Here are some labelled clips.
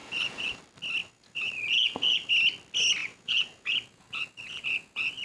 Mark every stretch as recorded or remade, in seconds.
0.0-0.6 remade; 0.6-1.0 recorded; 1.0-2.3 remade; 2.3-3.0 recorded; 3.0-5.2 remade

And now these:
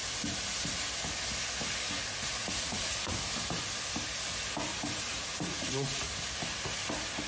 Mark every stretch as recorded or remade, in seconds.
0.0-2.4 recorded; 2.4-3.1 remade; 3.1-5.1 recorded; 5.1-6.0 remade; 6.0-7.3 recorded